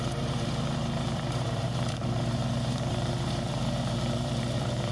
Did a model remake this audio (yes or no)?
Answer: yes